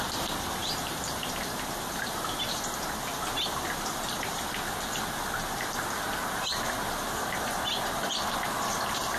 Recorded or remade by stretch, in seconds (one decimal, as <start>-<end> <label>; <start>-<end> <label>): 0.0-9.2 remade